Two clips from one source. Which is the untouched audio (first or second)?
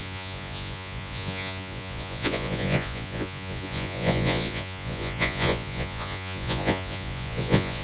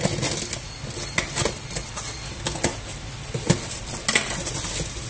second